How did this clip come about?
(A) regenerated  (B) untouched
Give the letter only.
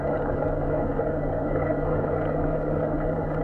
A